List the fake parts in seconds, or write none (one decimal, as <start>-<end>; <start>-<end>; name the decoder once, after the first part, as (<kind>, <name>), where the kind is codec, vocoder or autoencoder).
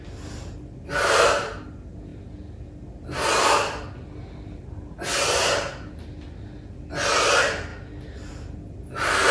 none